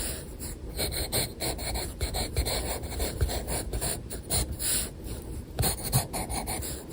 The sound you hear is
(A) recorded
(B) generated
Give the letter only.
B